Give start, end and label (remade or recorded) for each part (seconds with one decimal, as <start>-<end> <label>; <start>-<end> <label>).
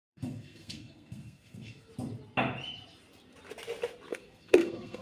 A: 0.0-1.9 remade; 1.9-4.1 recorded; 4.1-5.0 remade